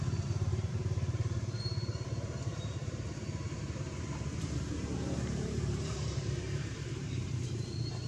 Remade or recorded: remade